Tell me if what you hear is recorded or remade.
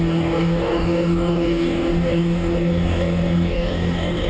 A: remade